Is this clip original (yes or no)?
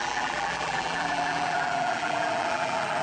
no